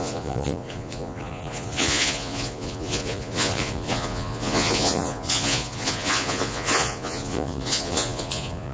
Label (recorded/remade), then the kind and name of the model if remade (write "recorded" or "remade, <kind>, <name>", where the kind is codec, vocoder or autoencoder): remade, vocoder, Vocos